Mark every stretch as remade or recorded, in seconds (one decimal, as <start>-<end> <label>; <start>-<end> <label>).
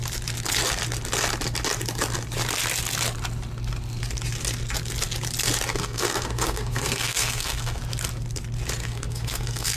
0.0-5.7 recorded; 5.7-7.8 remade; 7.8-8.8 recorded; 8.8-9.8 remade